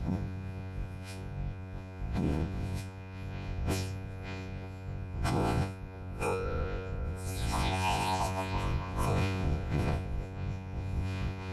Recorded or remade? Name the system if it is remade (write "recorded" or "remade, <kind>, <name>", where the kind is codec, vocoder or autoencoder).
remade, vocoder, Vocos